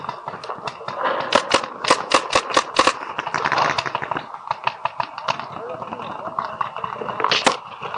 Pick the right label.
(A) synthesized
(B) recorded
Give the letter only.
B